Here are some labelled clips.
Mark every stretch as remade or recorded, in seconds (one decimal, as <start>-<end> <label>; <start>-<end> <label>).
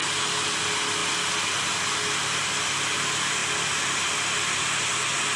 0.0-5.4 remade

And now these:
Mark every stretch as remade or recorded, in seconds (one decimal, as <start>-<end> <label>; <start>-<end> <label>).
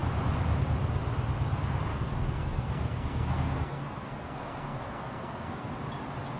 0.0-1.9 recorded; 1.9-5.7 remade; 5.7-6.4 recorded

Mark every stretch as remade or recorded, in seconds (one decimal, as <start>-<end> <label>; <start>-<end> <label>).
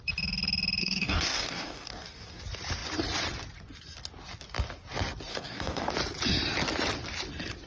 0.0-0.8 recorded; 0.8-2.4 remade; 2.4-5.3 recorded; 5.3-5.9 remade; 5.9-7.7 recorded